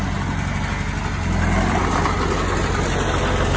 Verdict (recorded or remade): recorded